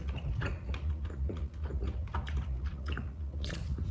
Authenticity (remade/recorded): remade